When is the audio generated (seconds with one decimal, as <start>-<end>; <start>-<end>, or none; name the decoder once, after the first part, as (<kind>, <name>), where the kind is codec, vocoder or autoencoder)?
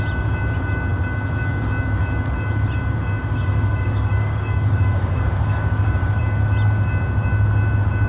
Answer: 3.2-6.2 (codec, DAC)